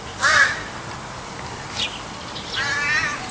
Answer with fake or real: real